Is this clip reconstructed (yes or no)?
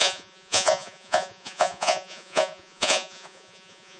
yes